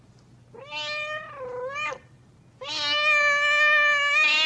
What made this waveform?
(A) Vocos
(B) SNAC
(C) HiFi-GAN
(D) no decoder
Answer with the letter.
D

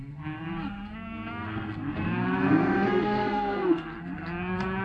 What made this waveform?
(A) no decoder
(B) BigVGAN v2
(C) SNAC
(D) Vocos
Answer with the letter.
C